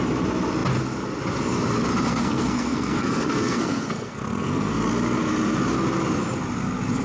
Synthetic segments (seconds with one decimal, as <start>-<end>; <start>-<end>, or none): 2.1-4.8